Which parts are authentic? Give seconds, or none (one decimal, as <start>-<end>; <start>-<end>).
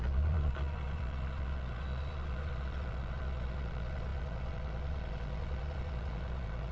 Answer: none